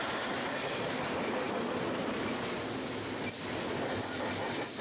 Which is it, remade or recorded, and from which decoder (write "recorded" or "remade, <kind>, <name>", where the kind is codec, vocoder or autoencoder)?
recorded